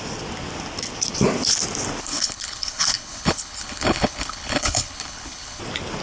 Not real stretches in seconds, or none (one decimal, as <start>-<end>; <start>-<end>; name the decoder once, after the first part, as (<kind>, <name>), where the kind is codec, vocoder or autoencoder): 2.0-5.6 (codec, HILCodec)